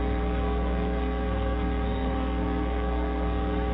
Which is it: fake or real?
fake